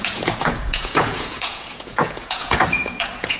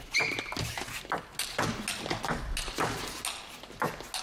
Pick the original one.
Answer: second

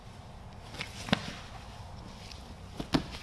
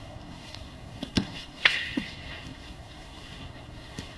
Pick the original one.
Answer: first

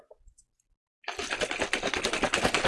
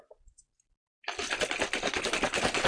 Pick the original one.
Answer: first